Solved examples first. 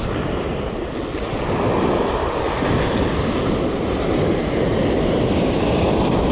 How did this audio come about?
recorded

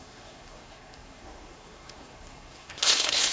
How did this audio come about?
remade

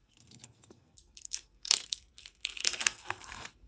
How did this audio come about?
remade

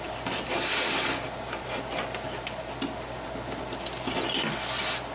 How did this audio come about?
recorded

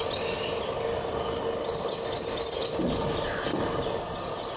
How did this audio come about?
recorded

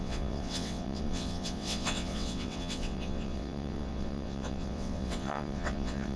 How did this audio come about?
remade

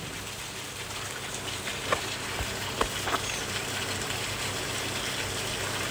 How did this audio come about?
recorded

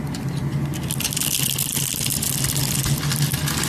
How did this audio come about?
recorded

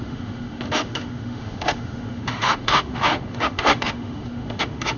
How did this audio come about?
remade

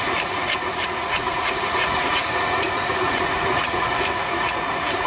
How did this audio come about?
remade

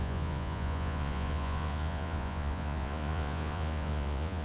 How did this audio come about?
remade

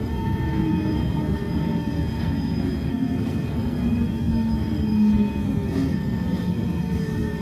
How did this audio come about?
remade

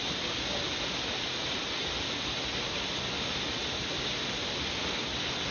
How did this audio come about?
recorded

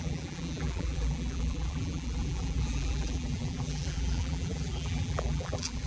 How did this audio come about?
remade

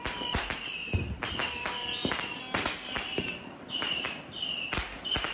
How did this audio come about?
remade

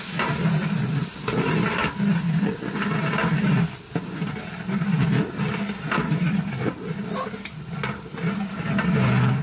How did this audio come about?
recorded